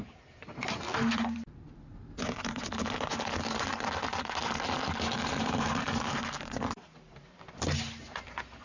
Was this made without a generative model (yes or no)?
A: yes